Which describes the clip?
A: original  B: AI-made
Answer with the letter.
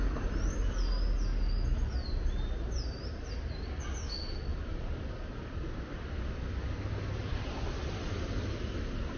A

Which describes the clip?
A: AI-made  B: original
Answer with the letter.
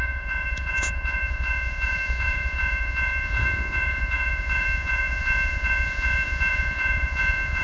A